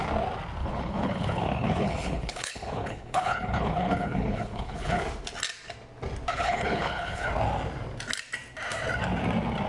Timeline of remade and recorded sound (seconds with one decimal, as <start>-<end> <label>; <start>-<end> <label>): 0.0-0.6 recorded; 0.6-5.0 remade; 5.0-6.3 recorded; 6.3-7.3 remade; 7.3-9.7 recorded